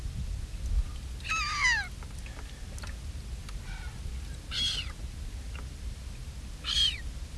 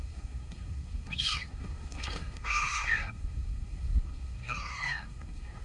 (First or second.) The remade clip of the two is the second